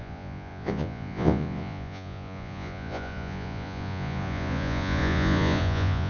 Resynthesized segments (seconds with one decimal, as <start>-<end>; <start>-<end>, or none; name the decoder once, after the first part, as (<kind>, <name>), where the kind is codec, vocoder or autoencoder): 0.0-6.1 (vocoder, Vocos)